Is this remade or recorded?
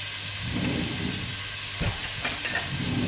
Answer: recorded